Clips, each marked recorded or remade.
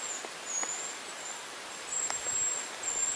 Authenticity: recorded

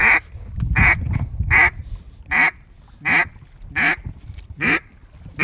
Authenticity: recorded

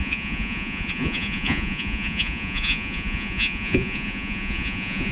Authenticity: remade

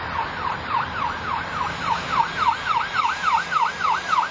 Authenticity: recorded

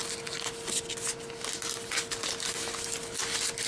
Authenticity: recorded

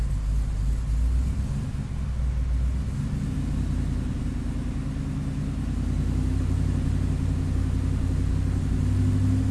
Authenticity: recorded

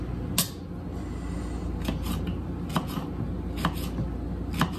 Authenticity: recorded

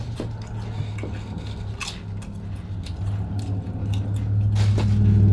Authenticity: recorded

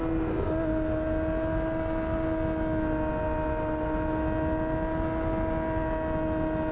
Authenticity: recorded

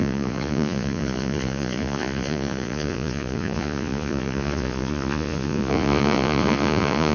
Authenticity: remade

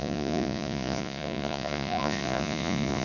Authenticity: remade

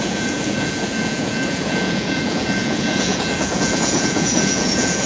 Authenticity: remade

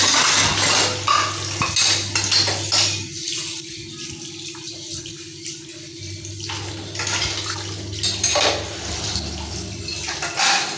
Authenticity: recorded